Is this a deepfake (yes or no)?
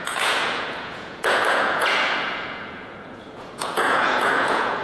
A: yes